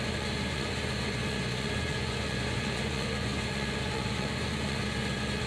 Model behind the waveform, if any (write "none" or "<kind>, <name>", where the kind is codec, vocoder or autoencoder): vocoder, Vocos